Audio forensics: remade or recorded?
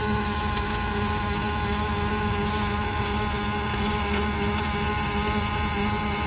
recorded